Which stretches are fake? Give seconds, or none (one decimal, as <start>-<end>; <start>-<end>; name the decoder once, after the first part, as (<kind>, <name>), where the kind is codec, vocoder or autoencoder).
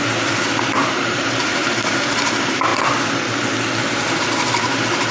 0.8-1.7 (vocoder, BigVGAN v2)